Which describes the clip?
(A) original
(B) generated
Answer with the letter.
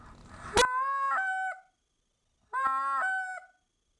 A